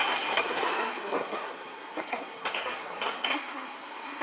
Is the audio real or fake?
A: fake